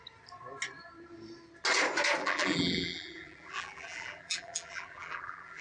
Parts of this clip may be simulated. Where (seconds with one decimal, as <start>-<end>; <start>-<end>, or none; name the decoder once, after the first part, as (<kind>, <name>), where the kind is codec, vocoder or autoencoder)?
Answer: 2.2-5.6 (vocoder, BigVGAN v2)